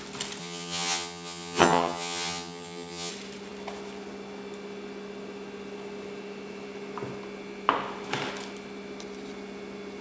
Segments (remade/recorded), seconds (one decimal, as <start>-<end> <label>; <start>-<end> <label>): 0.0-0.4 recorded; 0.4-3.1 remade; 3.1-10.0 recorded